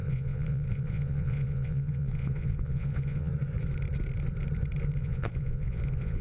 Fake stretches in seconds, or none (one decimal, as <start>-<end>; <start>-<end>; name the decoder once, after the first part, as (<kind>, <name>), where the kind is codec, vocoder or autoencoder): 0.0-3.3 (vocoder, Vocos); 5.0-6.2